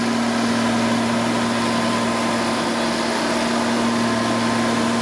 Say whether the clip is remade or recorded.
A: recorded